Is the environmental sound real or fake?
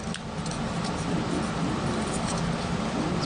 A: real